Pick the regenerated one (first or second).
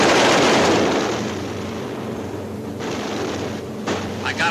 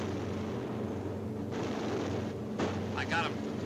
first